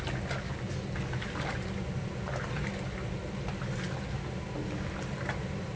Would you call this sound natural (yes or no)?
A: yes